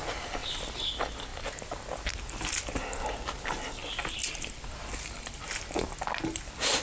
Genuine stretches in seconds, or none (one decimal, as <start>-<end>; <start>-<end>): 0.0-6.8